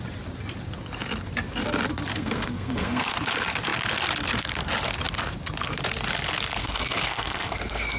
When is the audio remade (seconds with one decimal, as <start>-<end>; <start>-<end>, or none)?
2.1-3.1; 6.6-8.0